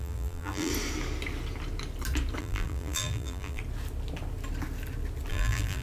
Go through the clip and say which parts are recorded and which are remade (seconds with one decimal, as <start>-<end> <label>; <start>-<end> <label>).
0.0-0.7 remade; 0.7-2.4 recorded; 2.4-3.6 remade; 3.6-5.3 recorded; 5.3-5.8 remade